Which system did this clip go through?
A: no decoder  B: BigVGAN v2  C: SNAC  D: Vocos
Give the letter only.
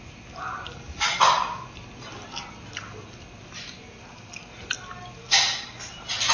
A